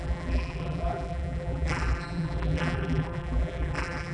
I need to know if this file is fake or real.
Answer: fake